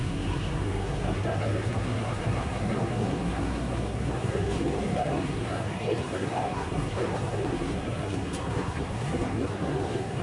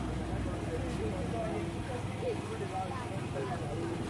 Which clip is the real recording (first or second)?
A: second